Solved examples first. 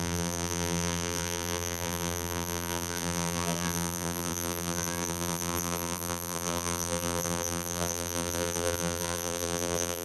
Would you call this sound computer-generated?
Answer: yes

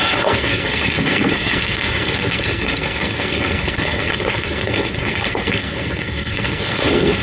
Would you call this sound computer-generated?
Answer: yes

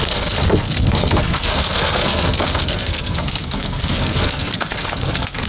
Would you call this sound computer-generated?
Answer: yes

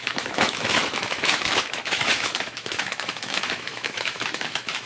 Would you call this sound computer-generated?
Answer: yes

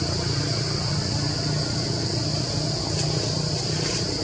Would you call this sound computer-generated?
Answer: no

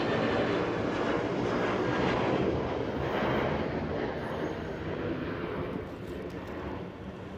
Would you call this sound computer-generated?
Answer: no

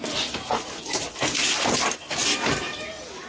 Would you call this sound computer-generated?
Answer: no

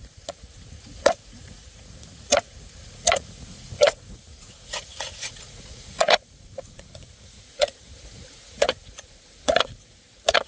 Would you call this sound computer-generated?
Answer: yes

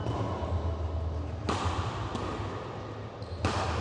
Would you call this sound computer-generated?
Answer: no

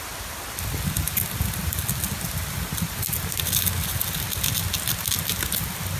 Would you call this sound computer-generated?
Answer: no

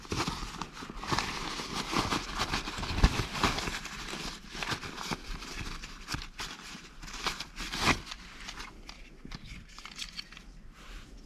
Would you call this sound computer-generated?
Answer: no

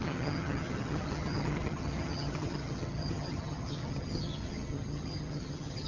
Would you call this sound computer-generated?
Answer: yes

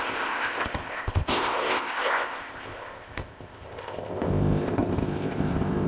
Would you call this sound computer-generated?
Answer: yes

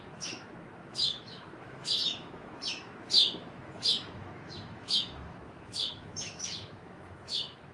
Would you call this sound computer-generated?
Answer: yes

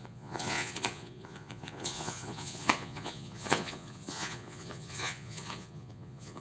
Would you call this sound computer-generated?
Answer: yes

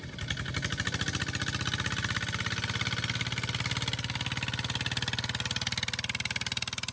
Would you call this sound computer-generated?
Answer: no